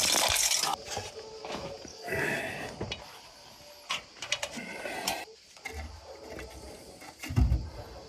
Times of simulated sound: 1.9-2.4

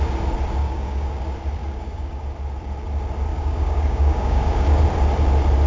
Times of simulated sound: 0.6-1.1; 1.6-2.2; 3.3-4.8

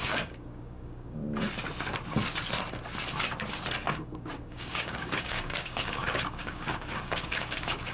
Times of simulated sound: 0.0-1.2; 3.9-7.9

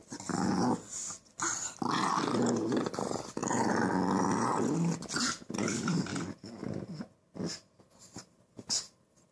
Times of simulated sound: none

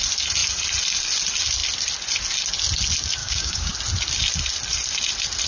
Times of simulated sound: 3.2-3.7